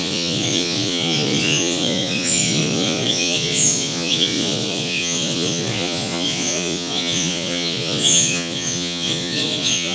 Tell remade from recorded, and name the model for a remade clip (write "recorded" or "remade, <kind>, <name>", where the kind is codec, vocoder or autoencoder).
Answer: remade, vocoder, Vocos